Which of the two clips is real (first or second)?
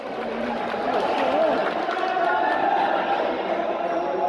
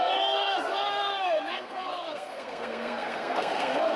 first